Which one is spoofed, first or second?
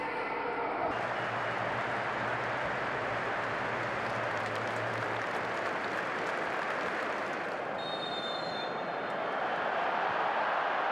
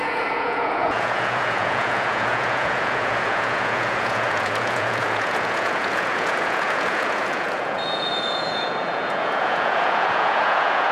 second